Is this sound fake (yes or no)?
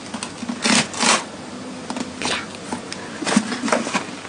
no